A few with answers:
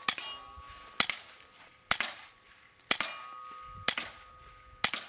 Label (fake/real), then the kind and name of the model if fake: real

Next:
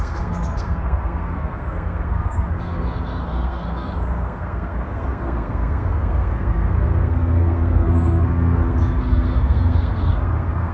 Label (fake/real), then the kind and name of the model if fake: fake, codec, SNAC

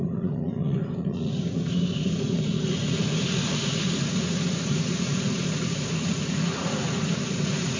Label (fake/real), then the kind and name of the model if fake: fake, vocoder, Vocos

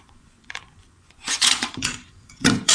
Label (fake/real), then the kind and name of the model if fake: fake, vocoder, Vocos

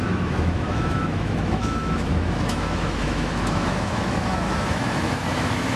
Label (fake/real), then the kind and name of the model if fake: fake, autoencoder, DAC-VAE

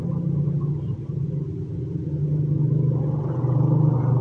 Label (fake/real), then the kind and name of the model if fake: real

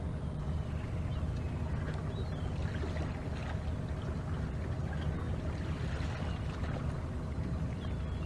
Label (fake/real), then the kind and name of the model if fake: real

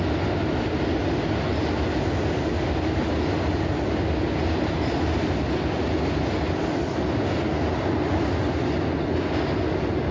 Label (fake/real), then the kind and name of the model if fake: real